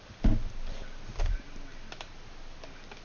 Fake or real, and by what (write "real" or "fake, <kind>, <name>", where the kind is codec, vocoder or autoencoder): real